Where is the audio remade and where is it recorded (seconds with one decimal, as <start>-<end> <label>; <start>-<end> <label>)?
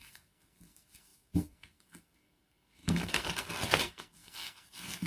0.0-5.1 remade